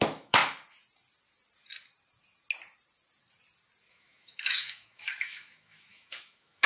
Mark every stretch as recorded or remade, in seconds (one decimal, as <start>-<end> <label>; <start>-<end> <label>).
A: 0.0-0.4 remade; 0.4-3.9 recorded; 3.9-6.7 remade